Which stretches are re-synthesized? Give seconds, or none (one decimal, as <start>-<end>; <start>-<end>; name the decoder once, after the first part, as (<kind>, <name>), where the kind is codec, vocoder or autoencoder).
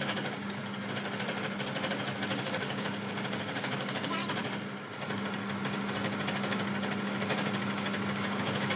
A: 0.0-0.6 (codec, DAC); 2.4-4.2; 8.1-8.8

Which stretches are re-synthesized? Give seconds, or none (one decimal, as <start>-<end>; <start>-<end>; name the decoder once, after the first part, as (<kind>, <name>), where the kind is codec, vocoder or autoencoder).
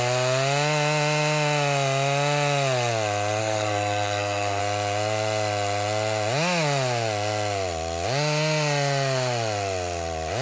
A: 3.4-4.6 (codec, SNAC)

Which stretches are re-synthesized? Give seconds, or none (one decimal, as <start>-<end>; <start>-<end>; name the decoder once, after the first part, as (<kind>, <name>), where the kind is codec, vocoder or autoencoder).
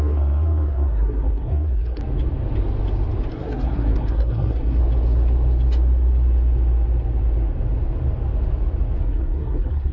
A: 0.0-2.0 (codec, SNAC); 3.3-4.8; 9.0-9.9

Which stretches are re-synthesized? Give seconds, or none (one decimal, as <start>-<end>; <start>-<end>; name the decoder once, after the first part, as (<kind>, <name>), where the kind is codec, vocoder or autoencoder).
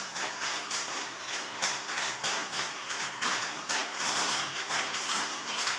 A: 0.0-5.8 (codec, SNAC)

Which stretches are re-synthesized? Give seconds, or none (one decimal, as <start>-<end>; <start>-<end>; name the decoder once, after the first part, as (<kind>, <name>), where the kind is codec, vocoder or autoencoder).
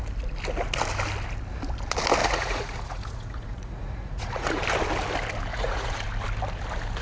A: 2.2-4.6 (vocoder, Vocos); 5.5-6.0